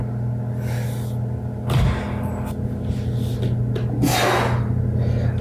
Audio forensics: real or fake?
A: real